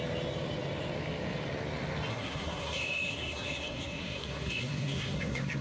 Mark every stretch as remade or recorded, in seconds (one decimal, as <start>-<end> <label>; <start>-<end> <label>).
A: 0.0-2.1 recorded; 2.1-5.6 remade